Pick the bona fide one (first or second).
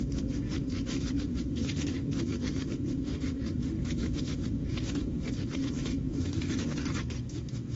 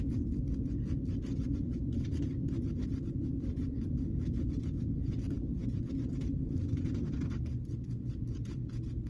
second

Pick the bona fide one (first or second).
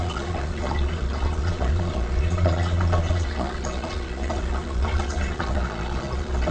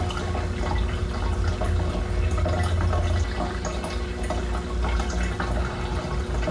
second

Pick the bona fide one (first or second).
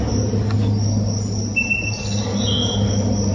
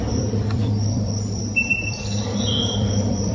first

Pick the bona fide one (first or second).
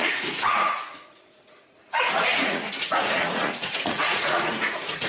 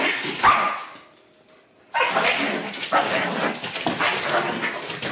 second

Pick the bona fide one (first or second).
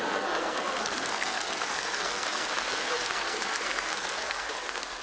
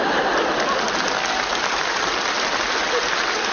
second